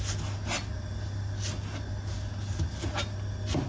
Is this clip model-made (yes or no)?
no